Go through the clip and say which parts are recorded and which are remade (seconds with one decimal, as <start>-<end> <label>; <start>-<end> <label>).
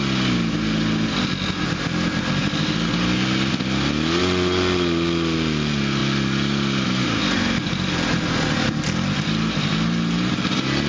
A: 0.0-10.9 recorded